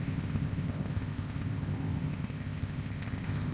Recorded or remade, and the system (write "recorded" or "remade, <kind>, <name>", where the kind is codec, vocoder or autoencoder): remade, codec, ZipCodec